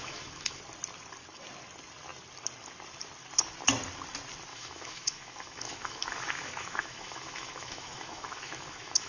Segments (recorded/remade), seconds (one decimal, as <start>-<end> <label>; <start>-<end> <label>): 0.0-0.6 remade; 0.6-4.5 recorded; 4.5-9.1 remade